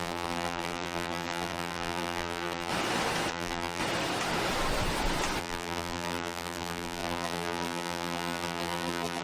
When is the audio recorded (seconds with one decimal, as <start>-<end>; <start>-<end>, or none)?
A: 2.7-3.3; 3.8-5.4